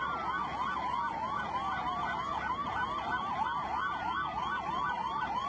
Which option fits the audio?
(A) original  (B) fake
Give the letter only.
A